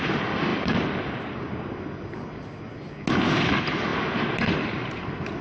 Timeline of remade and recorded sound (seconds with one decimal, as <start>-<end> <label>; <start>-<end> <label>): 0.0-5.4 recorded